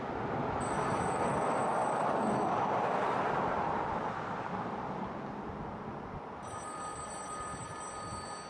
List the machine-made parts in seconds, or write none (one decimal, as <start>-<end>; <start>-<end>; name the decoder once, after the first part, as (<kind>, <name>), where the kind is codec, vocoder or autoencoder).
none